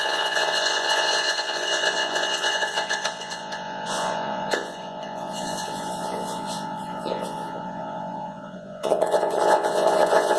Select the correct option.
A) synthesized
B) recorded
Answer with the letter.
A